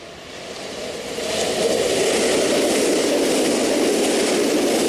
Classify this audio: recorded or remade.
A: recorded